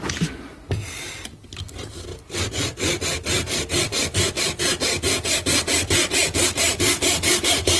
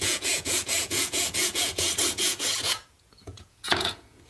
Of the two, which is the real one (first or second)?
first